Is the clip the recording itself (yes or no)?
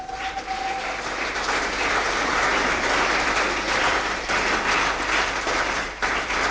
no